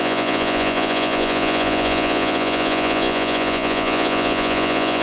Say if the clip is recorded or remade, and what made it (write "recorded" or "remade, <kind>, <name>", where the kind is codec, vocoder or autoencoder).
remade, vocoder, Vocos